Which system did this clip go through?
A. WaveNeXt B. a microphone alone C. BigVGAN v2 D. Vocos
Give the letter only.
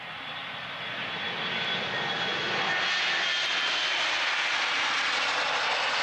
B